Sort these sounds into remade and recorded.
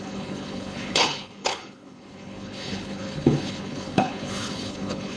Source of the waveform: remade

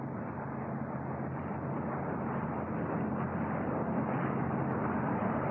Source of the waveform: recorded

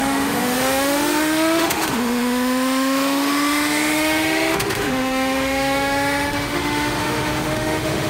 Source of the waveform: remade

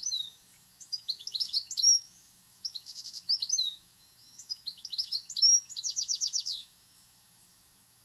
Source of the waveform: remade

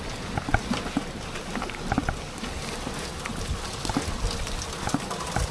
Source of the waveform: recorded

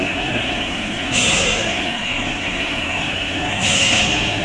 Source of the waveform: remade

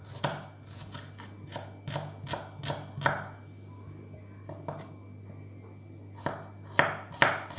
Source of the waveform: recorded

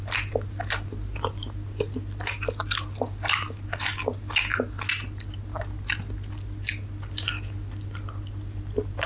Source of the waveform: recorded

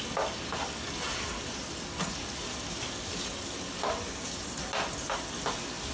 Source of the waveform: recorded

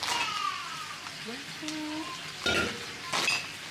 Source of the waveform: recorded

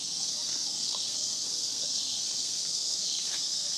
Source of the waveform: remade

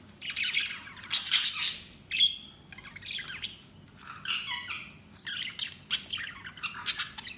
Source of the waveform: recorded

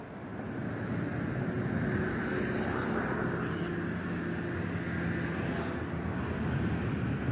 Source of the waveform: recorded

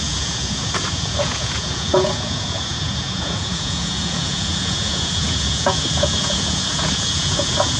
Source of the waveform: remade